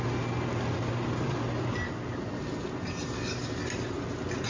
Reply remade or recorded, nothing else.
recorded